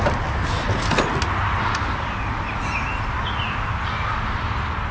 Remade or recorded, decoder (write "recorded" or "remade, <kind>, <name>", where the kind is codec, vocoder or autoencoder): recorded